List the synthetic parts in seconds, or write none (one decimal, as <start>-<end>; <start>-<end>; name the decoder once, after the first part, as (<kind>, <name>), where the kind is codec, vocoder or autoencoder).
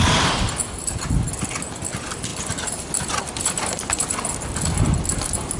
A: none